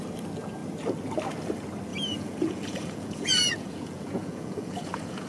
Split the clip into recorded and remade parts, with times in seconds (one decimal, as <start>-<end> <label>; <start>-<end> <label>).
0.0-1.9 recorded; 1.9-5.3 remade

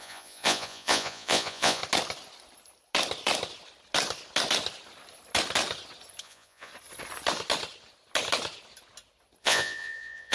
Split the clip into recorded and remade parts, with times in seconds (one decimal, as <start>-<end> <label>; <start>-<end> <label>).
0.0-1.8 remade; 1.8-6.2 recorded; 6.2-6.7 remade; 6.7-9.4 recorded; 9.4-10.3 remade

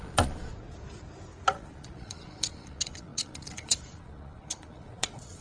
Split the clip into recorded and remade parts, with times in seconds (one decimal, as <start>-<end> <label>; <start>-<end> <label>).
0.0-0.5 remade; 0.5-1.5 recorded; 1.5-5.4 remade

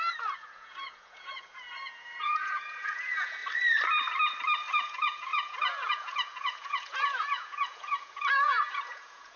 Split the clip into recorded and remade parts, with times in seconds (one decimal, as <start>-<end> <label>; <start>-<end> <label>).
0.0-3.4 remade; 3.4-4.7 recorded; 4.7-9.4 remade

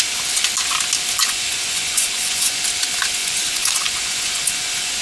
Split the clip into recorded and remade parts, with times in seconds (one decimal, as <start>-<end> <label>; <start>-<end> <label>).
0.0-1.2 recorded; 1.2-2.6 remade; 2.6-3.2 recorded; 3.2-5.0 remade

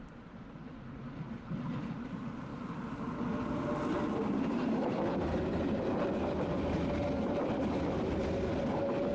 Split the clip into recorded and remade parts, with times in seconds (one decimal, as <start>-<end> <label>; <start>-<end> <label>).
0.0-9.1 recorded

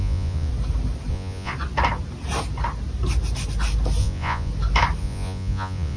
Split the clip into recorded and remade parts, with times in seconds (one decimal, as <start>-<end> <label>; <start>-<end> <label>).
0.0-0.5 remade; 0.5-1.1 recorded; 1.1-1.5 remade; 1.5-4.0 recorded; 4.0-4.5 remade; 4.5-5.0 recorded; 5.0-6.0 remade